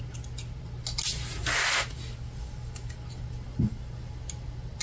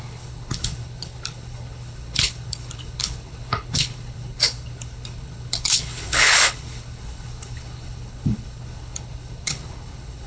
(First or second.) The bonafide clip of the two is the first